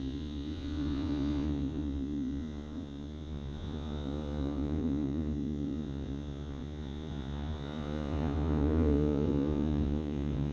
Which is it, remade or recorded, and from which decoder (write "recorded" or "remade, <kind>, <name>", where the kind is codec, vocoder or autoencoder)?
remade, vocoder, Vocos